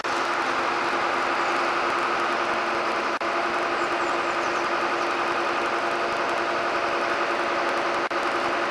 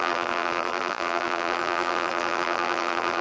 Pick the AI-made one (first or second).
second